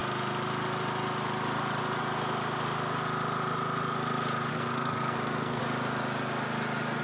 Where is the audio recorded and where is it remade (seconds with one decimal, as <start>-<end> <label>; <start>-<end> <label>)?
0.0-4.5 recorded; 4.5-5.6 remade; 5.6-7.0 recorded